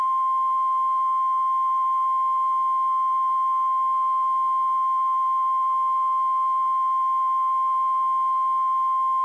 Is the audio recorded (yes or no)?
yes